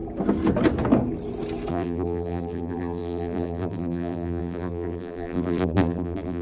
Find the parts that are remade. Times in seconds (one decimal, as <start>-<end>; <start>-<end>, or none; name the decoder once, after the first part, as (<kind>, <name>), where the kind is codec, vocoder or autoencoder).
1.7-6.4 (vocoder, BigVGAN v2)